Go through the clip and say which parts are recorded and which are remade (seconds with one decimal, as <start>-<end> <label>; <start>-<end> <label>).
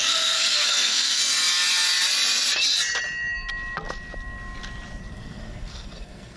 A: 0.0-1.2 remade; 1.2-5.0 recorded; 5.0-6.4 remade